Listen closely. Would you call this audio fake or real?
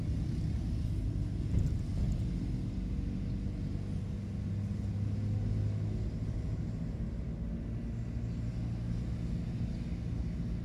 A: real